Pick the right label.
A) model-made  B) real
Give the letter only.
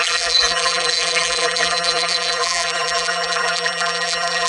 A